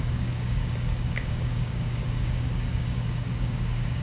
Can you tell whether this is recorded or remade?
remade